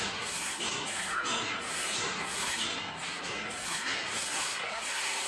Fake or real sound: fake